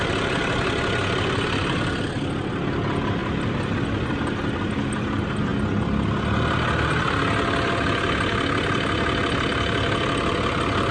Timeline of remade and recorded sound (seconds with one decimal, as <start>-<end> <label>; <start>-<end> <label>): 0.0-10.9 recorded